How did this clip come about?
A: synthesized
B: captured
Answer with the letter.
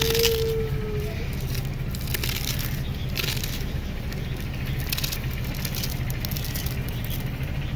B